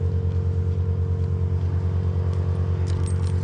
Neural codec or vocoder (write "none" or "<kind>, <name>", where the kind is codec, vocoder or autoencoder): none